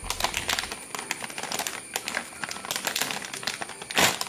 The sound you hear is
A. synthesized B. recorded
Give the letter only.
B